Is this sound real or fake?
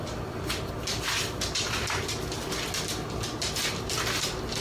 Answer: real